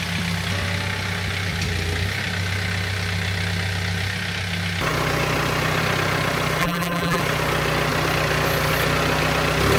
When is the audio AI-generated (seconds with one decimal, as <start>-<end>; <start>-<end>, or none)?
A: 6.6-7.2